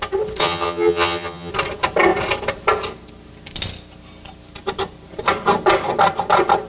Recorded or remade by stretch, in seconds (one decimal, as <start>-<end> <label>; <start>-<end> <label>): 0.0-0.4 recorded; 0.4-1.5 remade; 1.5-6.7 recorded